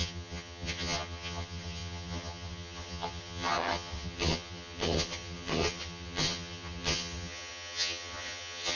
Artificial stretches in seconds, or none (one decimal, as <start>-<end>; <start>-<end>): 0.0-8.8

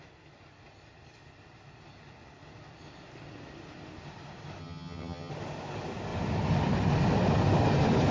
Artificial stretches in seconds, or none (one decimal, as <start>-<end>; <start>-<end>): 4.6-5.3

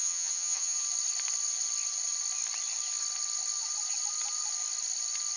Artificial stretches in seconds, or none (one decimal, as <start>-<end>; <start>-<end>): 0.0-0.8

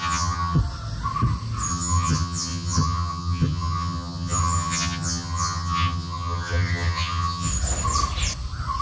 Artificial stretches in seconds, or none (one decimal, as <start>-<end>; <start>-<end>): 0.0-0.6; 1.7-7.5

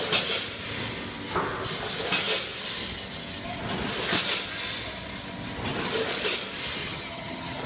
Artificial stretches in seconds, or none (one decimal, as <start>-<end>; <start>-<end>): 6.8-7.7

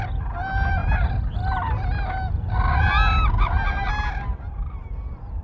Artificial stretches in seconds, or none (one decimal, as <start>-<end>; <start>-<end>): none

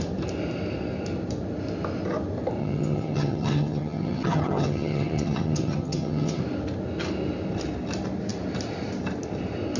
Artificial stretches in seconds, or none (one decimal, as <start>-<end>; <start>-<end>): 2.6-6.4